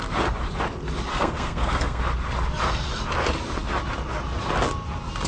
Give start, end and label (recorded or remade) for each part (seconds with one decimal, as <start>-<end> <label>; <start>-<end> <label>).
0.0-1.1 recorded; 1.1-2.0 remade; 2.0-5.3 recorded